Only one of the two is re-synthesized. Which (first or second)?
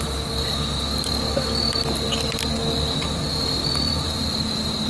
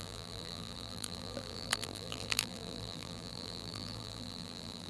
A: second